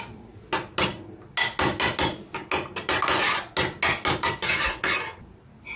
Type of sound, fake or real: real